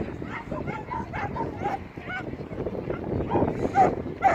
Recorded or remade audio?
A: recorded